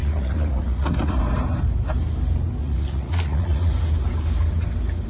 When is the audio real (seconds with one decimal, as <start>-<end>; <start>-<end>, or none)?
1.2-2.6; 3.7-5.1